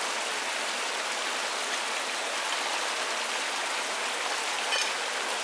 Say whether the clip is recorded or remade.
recorded